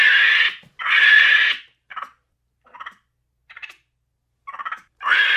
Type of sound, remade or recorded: recorded